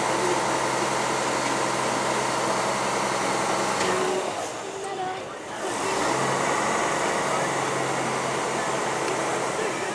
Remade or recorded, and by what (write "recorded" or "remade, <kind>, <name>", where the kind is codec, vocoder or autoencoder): recorded